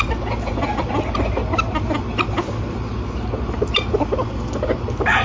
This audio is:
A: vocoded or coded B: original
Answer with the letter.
B